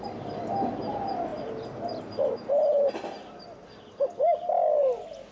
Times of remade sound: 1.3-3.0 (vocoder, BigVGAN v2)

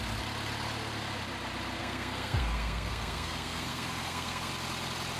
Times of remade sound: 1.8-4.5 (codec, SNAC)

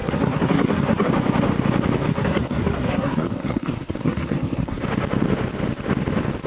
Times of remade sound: 0.0-1.1 (codec, SNAC); 2.1-4.8

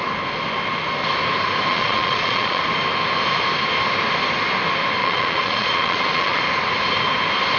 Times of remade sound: 1.7-2.6 (vocoder, Vocos); 5.0-6.4

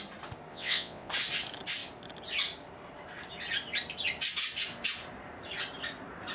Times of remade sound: 0.5-1.1 (vocoder, WaveNeXt)

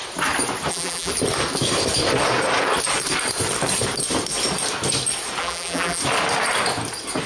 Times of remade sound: 0.7-1.1 (vocoder, BigVGAN v2); 5.4-6.0

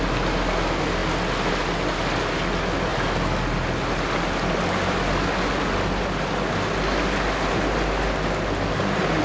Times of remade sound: none

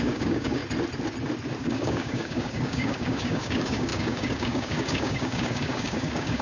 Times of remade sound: 0.0-0.6 (codec, DAC); 1.6-6.4